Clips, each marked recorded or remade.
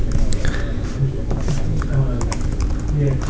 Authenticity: recorded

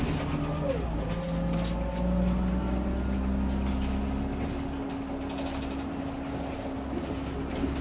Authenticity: recorded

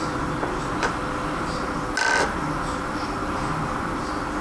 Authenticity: recorded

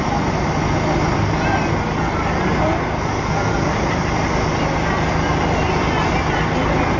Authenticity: recorded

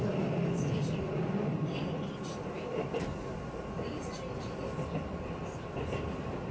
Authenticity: recorded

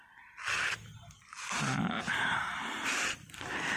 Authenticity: recorded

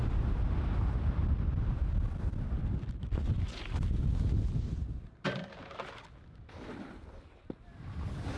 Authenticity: recorded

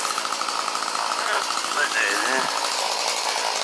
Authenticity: recorded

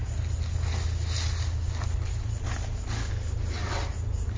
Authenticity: recorded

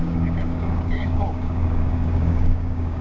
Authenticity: remade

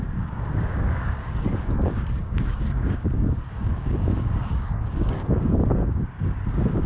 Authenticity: remade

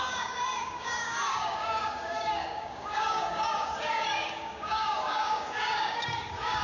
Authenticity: remade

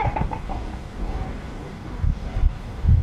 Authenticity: remade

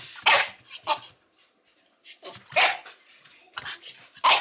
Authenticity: recorded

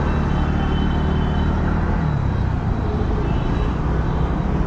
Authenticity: recorded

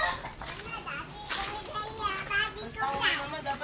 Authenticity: recorded